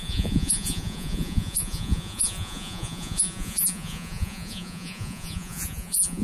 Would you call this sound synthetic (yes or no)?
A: yes